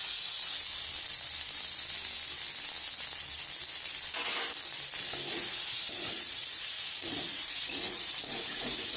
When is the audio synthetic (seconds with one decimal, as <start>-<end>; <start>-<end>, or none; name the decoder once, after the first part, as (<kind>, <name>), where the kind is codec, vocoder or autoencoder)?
0.0-0.4 (vocoder, Vocos); 5.3-9.0